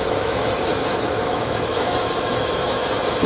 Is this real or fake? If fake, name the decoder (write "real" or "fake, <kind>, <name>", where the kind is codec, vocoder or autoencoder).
fake, autoencoder, DAC-VAE